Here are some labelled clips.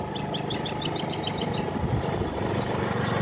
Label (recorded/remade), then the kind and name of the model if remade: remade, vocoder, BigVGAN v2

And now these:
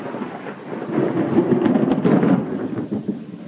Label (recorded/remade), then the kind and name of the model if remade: recorded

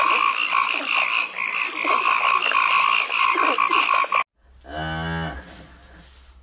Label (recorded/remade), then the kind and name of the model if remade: recorded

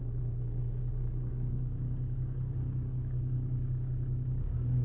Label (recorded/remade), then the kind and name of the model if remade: remade, codec, DAC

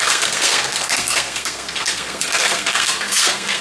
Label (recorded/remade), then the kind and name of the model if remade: remade, codec, SNAC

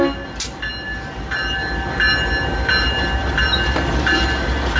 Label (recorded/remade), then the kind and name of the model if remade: recorded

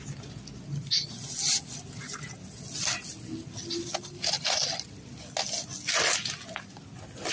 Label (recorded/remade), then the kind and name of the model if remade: recorded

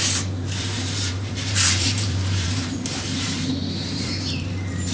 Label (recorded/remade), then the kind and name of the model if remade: remade, vocoder, BigVGAN v2